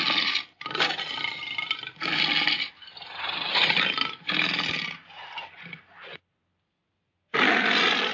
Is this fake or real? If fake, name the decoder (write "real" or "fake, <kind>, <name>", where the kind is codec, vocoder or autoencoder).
real